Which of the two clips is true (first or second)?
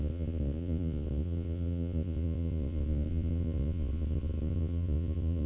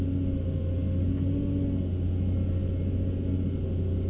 second